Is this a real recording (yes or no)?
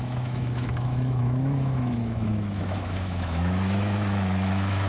no